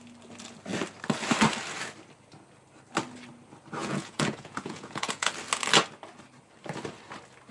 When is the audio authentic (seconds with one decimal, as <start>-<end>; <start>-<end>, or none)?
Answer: 0.0-3.8; 5.3-7.5